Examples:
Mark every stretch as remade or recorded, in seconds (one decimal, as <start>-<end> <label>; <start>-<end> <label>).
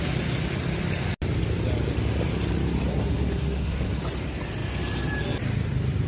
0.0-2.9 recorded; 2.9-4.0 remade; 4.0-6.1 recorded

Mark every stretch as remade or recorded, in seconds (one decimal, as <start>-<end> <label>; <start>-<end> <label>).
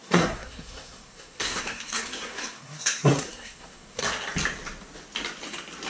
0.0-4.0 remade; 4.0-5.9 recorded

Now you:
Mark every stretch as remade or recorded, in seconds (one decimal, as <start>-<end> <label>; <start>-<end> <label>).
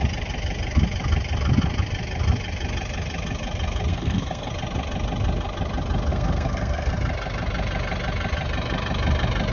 0.0-3.9 recorded; 3.9-4.5 remade; 4.5-6.1 recorded; 6.1-6.9 remade; 6.9-9.5 recorded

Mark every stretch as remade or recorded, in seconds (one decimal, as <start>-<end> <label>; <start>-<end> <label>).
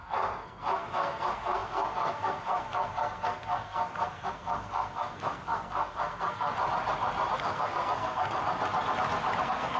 0.0-6.5 remade; 6.5-7.3 recorded; 7.3-8.4 remade; 8.4-9.4 recorded; 9.4-9.8 remade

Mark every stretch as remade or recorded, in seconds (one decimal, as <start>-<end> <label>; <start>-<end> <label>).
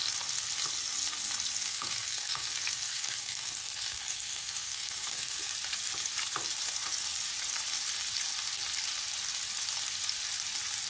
0.0-1.6 recorded; 1.6-5.5 remade; 5.5-10.9 recorded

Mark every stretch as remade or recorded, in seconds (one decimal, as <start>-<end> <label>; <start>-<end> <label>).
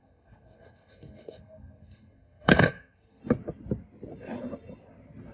0.0-3.2 remade; 3.2-5.3 recorded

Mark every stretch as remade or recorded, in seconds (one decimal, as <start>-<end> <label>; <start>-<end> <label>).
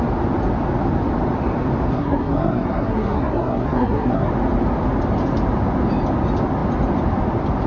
0.0-1.9 recorded; 1.9-4.3 remade; 4.3-7.7 recorded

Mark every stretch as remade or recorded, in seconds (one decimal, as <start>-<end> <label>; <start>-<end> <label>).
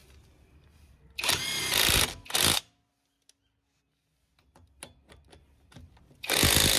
0.0-6.8 recorded